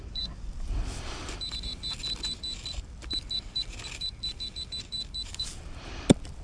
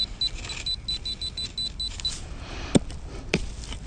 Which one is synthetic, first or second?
first